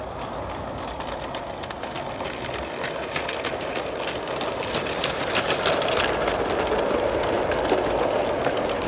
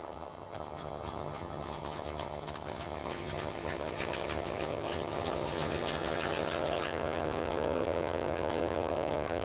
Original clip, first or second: first